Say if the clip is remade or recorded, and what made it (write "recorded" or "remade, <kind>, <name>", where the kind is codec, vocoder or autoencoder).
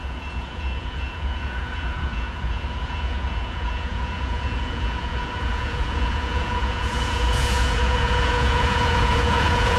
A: remade, vocoder, Vocos